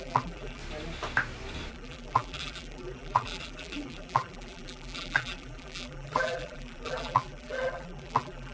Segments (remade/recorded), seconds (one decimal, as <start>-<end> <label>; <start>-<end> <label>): 0.0-0.6 remade; 0.6-1.7 recorded; 1.7-8.5 remade